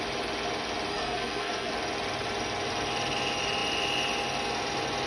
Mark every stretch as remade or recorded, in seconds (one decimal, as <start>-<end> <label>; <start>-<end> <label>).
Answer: 0.0-0.9 recorded; 0.9-1.7 remade; 1.7-5.1 recorded